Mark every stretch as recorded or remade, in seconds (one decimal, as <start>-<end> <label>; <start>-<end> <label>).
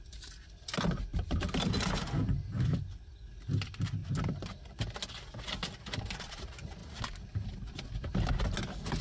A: 0.0-9.0 recorded